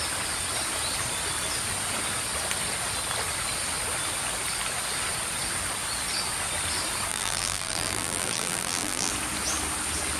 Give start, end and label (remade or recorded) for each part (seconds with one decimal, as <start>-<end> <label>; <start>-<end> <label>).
0.0-7.1 recorded; 7.1-9.1 remade; 9.1-10.2 recorded